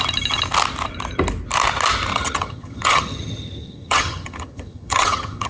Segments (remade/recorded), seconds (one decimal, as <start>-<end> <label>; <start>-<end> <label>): 0.0-2.1 recorded; 2.1-5.5 remade